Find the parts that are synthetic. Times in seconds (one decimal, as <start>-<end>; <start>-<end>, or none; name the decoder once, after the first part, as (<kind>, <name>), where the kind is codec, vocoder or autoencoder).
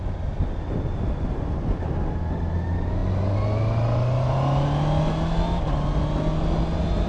none